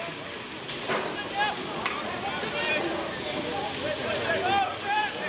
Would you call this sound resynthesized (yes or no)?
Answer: no